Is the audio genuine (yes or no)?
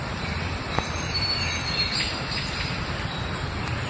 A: yes